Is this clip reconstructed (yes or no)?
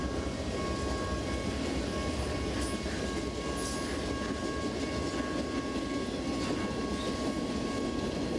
no